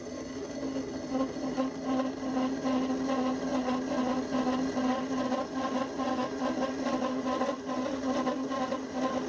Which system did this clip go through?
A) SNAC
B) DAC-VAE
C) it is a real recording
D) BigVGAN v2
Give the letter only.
C